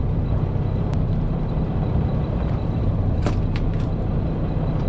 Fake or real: fake